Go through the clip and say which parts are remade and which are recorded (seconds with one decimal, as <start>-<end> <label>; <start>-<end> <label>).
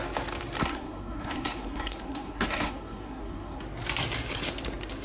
0.0-0.6 recorded; 0.6-3.6 remade; 3.6-5.0 recorded